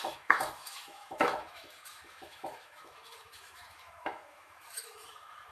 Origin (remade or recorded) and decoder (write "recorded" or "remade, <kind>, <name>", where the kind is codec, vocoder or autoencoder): remade, autoencoder, DAC-VAE